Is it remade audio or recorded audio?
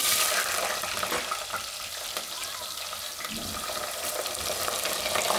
recorded